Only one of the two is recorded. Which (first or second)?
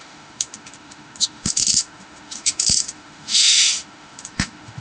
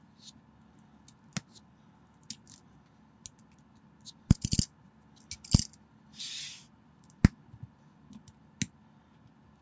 second